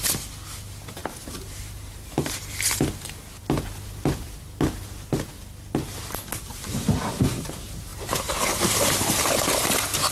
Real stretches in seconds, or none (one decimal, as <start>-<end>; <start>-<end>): 0.0-1.0; 2.3-6.5; 7.5-7.9; 9.3-10.1

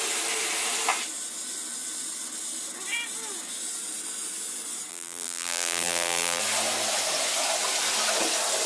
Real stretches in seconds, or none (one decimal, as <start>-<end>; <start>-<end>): 0.0-4.9; 6.4-8.7

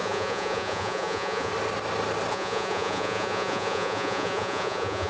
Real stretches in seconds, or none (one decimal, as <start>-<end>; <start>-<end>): 1.5-2.3

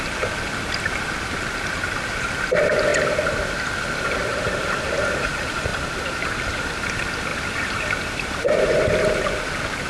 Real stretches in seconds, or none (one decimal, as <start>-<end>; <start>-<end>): 0.0-4.3; 5.3-5.7; 6.6-7.3; 8.7-9.9

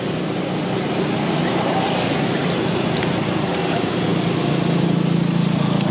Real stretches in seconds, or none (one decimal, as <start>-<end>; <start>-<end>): 0.0-5.9

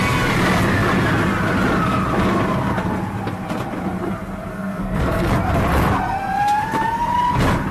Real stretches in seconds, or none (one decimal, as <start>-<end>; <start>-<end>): 0.0-4.5; 5.3-7.7

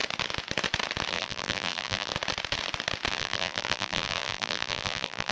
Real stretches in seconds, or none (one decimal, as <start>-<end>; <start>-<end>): 0.0-1.1; 2.1-3.1